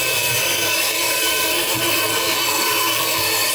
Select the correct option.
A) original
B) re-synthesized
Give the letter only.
B